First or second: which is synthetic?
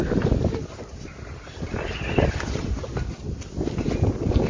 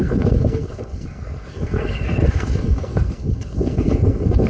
second